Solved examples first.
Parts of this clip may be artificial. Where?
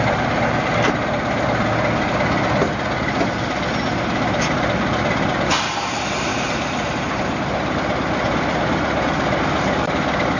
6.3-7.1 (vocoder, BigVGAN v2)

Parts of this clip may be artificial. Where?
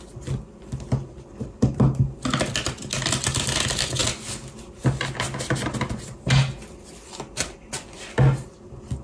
none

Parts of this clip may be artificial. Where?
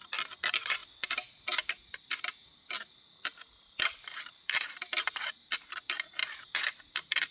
0.8-5.2 (vocoder, BigVGAN v2); 6.2-7.3